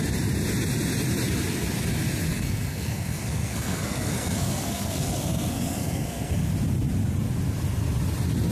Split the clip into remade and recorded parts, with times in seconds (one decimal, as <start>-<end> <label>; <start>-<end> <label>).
0.0-2.3 recorded; 2.3-6.5 remade; 6.5-8.5 recorded